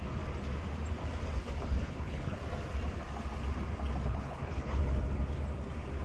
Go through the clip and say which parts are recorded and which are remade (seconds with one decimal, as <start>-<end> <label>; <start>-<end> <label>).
0.0-1.4 recorded; 1.4-2.4 remade; 2.4-4.1 recorded; 4.1-4.8 remade; 4.8-6.0 recorded